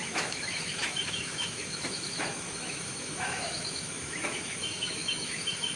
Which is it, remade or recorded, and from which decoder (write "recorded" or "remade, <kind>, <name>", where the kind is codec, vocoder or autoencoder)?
remade, autoencoder, DAC-VAE